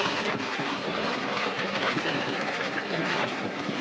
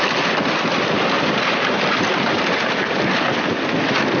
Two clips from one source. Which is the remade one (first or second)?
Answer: first